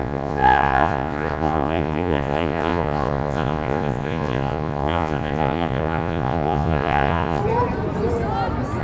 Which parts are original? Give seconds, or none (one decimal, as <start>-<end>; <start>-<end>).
7.4-8.8